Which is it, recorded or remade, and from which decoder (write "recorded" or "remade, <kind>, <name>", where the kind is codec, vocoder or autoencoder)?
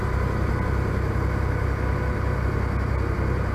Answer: recorded